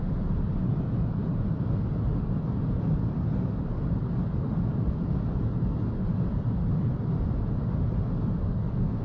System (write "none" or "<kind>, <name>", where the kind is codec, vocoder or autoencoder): none